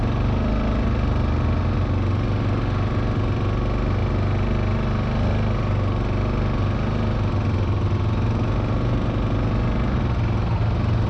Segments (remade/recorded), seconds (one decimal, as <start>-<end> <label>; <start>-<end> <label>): 0.0-11.1 recorded